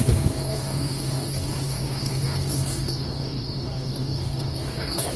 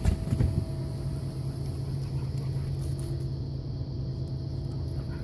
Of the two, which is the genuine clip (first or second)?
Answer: second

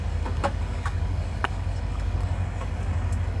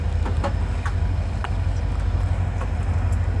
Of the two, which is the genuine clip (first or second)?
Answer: second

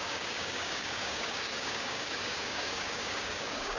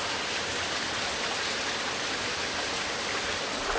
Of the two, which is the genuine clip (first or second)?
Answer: second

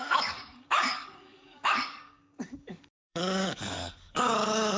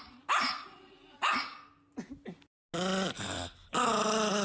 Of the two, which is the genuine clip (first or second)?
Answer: second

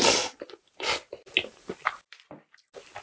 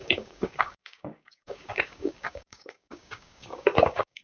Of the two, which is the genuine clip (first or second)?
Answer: first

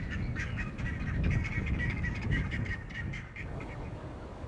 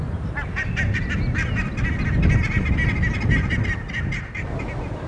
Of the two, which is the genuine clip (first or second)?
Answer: second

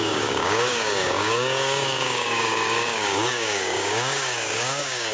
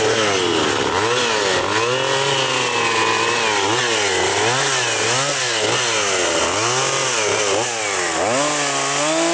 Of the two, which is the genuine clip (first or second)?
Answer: second